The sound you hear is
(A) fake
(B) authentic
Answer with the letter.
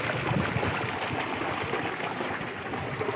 B